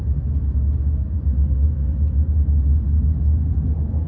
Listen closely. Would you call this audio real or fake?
real